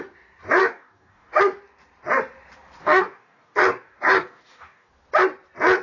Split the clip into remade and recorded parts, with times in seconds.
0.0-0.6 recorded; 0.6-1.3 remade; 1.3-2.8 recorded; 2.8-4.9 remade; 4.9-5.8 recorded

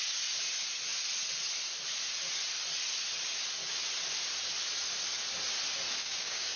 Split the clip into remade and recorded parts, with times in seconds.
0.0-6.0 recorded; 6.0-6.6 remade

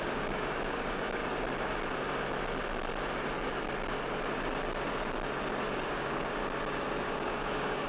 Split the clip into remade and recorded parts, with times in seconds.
0.0-1.2 remade; 1.2-5.9 recorded; 5.9-6.4 remade; 6.4-7.1 recorded; 7.1-7.9 remade